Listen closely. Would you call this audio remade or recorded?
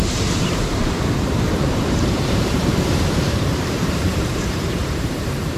remade